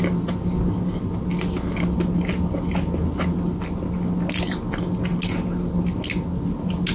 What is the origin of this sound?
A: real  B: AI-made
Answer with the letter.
A